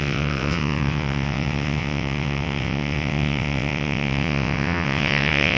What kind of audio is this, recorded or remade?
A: remade